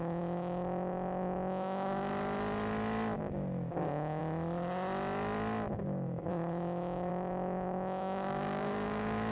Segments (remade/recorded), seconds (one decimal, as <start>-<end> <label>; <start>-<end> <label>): 0.0-2.1 remade; 2.1-3.2 recorded; 3.2-4.2 remade; 4.2-5.7 recorded; 5.7-9.3 remade